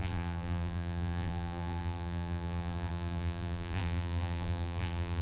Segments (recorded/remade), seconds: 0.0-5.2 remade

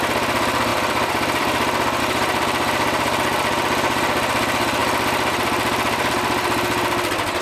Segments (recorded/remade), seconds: 0.0-0.7 recorded; 0.7-2.0 remade; 2.0-7.4 recorded

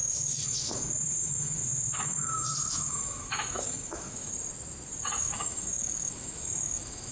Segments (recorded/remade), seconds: 0.0-4.3 remade; 4.3-5.2 recorded; 5.2-7.1 remade

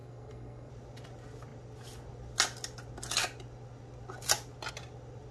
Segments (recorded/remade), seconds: 0.0-0.7 remade; 0.7-5.3 recorded

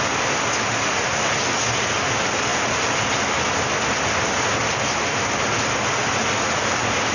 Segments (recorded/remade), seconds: 0.0-7.1 recorded

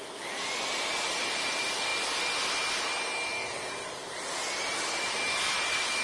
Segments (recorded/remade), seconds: 0.0-6.0 recorded

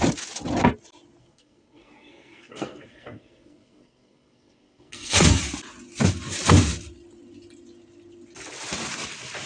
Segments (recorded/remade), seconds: 0.0-1.2 recorded; 1.2-5.4 remade; 5.4-9.5 recorded

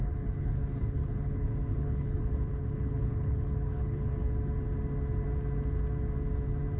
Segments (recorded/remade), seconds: 0.0-4.1 remade; 4.1-6.8 recorded